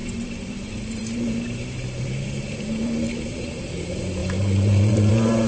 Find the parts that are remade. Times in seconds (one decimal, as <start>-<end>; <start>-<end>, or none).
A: 0.0-5.5

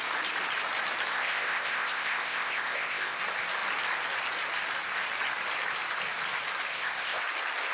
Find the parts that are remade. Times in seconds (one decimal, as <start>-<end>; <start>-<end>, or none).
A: 1.1-3.2; 6.7-7.2

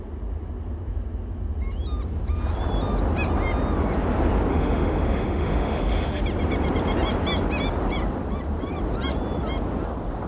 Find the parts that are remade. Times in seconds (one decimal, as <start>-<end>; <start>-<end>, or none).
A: 4.5-6.2